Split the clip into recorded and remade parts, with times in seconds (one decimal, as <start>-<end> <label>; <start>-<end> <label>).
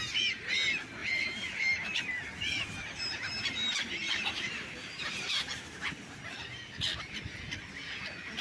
0.0-1.0 recorded; 1.0-5.3 remade; 5.3-8.4 recorded